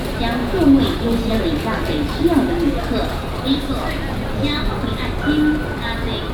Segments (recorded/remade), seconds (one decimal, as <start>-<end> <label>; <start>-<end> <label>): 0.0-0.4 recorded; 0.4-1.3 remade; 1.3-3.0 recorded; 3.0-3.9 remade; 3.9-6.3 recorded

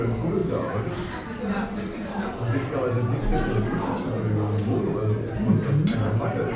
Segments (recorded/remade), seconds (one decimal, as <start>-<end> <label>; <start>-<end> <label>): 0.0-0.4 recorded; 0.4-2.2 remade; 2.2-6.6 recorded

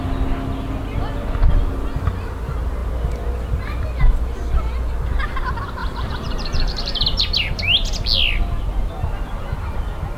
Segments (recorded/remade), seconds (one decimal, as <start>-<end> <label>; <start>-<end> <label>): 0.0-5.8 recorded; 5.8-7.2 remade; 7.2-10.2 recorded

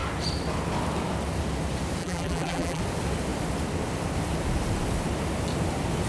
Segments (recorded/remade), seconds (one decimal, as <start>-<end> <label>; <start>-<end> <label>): 0.0-2.0 recorded; 2.0-2.8 remade; 2.8-6.1 recorded

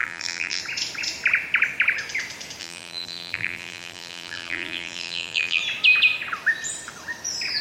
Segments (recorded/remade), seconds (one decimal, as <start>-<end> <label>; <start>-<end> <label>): 0.0-0.6 remade; 0.6-2.6 recorded; 2.6-5.6 remade; 5.6-7.6 recorded

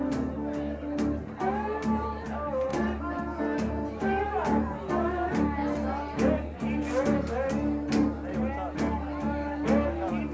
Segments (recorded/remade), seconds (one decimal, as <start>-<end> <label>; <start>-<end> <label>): 0.0-2.7 recorded; 2.7-3.2 remade; 3.2-10.3 recorded